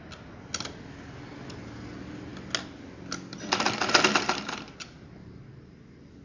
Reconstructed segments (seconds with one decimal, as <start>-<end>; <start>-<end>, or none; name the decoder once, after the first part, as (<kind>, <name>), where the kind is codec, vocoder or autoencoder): none